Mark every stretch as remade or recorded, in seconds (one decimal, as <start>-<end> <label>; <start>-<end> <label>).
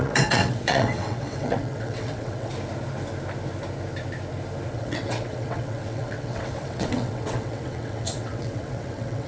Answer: 0.0-2.5 remade; 2.5-4.7 recorded; 4.7-9.3 remade